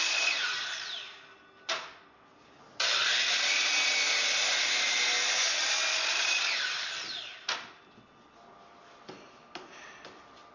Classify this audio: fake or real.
real